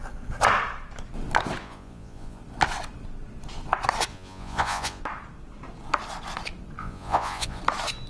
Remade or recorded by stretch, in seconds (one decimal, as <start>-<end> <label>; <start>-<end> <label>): 0.0-1.6 recorded; 1.6-2.4 remade; 2.4-4.1 recorded; 4.1-5.0 remade; 5.0-6.8 recorded; 6.8-7.6 remade; 7.6-8.1 recorded